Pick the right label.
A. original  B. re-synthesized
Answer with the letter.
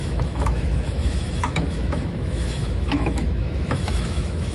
B